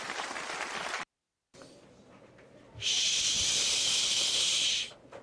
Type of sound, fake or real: fake